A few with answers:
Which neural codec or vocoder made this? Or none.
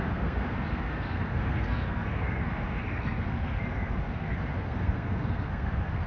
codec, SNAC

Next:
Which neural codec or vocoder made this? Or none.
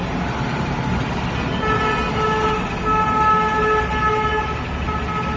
none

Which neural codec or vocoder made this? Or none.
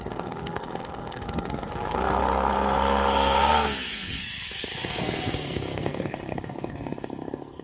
codec, SNAC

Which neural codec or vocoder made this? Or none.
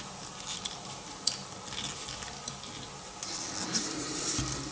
none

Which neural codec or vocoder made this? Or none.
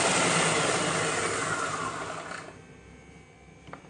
none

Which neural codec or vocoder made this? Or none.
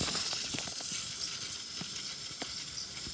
none